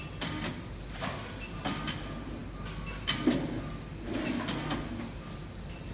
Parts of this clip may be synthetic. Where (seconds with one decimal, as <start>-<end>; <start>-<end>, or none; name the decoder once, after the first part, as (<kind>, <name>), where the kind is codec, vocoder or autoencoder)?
none